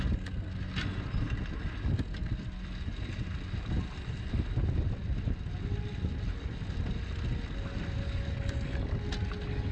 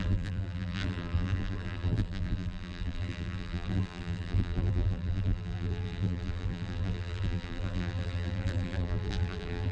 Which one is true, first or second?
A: first